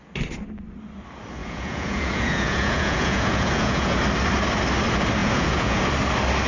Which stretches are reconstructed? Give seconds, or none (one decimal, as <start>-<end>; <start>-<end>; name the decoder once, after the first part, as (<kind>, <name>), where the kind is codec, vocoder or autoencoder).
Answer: 1.4-4.0 (vocoder, Vocos); 5.2-5.8